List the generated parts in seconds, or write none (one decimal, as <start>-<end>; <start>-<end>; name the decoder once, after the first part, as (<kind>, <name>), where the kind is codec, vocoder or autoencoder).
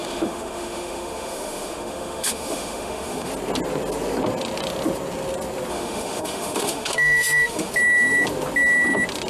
0.0-3.3 (autoencoder, DAC-VAE); 5.7-7.7